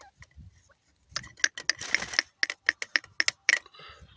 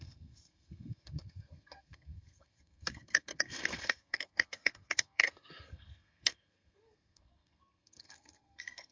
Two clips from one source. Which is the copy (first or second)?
second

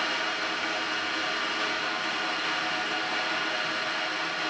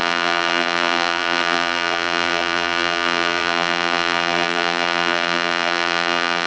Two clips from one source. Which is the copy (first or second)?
second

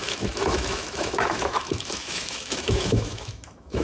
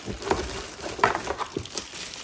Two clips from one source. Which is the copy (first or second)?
first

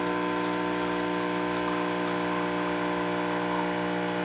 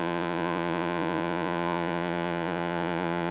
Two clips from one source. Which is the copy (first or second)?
second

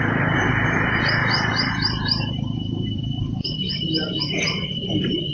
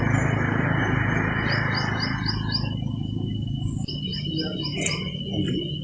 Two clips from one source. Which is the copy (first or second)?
first